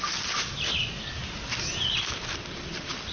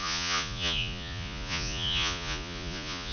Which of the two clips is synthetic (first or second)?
second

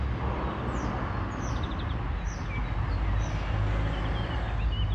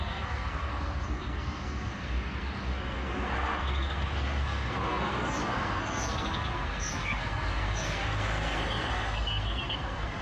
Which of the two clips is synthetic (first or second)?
second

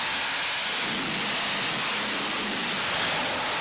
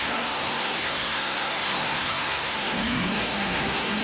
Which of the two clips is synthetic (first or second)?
second